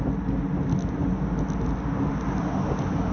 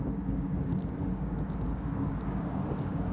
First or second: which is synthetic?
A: second